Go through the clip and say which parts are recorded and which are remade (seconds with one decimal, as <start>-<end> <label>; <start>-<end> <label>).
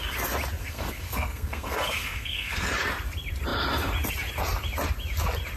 0.0-0.6 recorded; 0.6-2.7 remade; 2.7-5.6 recorded